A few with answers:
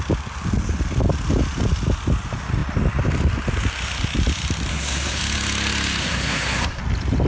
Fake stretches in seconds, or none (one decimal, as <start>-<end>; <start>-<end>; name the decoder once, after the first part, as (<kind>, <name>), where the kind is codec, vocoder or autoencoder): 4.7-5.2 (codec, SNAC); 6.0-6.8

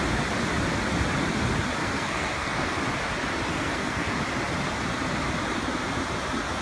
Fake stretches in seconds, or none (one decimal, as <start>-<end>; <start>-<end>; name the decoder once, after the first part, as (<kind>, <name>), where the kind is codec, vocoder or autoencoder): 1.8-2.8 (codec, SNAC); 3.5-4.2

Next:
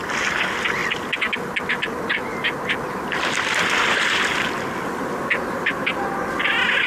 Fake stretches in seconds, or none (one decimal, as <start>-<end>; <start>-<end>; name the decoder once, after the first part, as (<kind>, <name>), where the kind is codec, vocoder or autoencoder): none